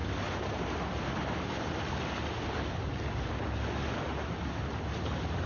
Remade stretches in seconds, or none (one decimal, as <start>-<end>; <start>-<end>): none